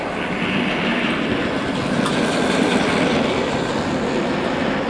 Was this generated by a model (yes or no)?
no